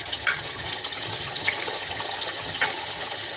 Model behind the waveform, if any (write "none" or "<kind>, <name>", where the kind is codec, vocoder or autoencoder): vocoder, HiFi-GAN